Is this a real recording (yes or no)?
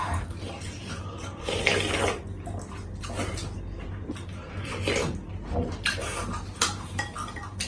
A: yes